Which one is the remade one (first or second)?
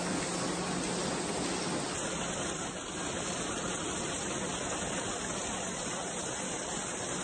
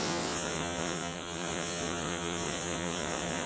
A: second